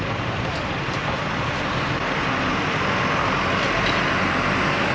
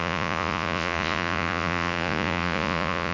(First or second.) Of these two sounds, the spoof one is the second